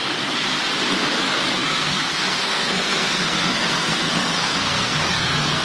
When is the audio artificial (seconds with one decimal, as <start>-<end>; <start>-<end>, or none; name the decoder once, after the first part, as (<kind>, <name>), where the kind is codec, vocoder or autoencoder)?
1.2-5.6 (codec, SNAC)